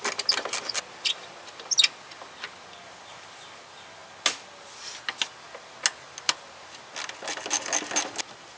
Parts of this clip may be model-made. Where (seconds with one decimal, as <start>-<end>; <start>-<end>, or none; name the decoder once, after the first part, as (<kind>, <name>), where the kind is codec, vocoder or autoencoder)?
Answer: none